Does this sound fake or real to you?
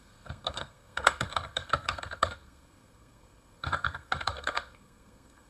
fake